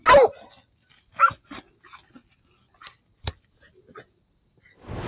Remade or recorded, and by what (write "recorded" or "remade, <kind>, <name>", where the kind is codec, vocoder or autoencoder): recorded